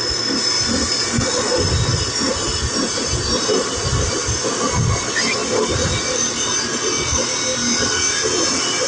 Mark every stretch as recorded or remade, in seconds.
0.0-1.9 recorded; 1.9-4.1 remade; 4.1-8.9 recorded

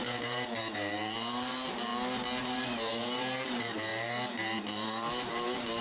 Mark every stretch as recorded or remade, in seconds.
0.0-1.9 remade; 1.9-2.4 recorded; 2.4-5.8 remade

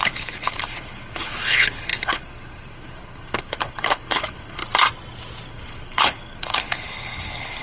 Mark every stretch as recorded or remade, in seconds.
0.0-4.6 remade; 4.6-5.5 recorded; 5.5-7.6 remade

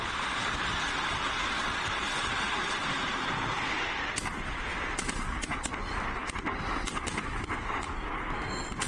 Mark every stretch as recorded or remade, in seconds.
0.0-8.9 recorded

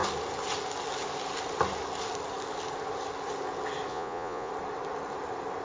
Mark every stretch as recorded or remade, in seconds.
0.0-3.9 recorded; 3.9-4.5 remade; 4.5-5.6 recorded

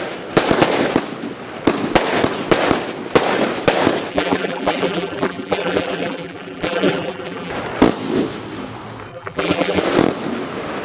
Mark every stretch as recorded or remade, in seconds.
0.0-4.1 recorded; 4.1-7.5 remade; 7.5-9.1 recorded; 9.1-9.8 remade; 9.8-10.8 recorded

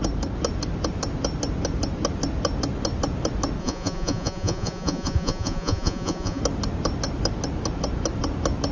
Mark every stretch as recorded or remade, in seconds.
0.0-3.6 recorded; 3.6-6.4 remade; 6.4-8.7 recorded

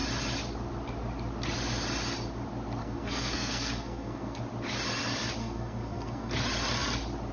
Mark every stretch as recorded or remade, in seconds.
0.0-2.8 recorded; 2.8-4.4 remade; 4.4-5.4 recorded; 5.4-6.3 remade; 6.3-7.3 recorded